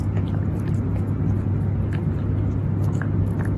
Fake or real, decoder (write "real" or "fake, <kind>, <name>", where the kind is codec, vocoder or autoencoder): real